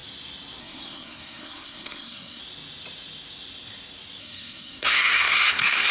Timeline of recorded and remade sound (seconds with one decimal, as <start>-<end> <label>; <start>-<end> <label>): 0.0-0.6 recorded; 0.6-2.4 remade; 2.4-4.2 recorded; 4.2-5.9 remade